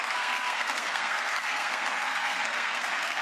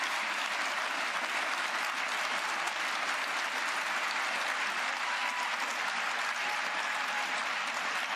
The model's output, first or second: first